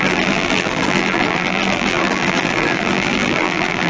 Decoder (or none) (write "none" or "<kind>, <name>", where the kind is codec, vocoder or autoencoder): vocoder, BigVGAN v2